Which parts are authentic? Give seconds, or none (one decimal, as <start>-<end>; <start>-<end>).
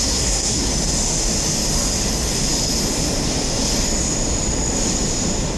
0.7-5.6